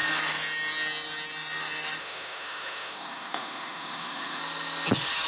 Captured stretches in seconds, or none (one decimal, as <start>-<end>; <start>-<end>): 0.0-2.0; 4.4-5.3